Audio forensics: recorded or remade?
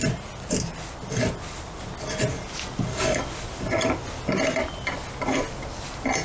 recorded